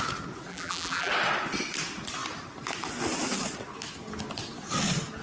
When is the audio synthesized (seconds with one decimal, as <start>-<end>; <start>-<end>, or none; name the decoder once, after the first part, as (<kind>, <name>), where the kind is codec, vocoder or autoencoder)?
0.5-1.1 (vocoder, BigVGAN v2)